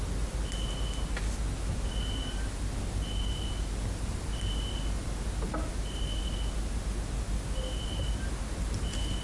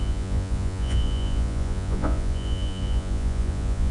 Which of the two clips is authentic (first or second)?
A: first